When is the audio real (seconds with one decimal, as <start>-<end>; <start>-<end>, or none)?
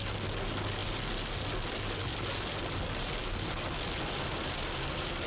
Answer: 0.0-5.3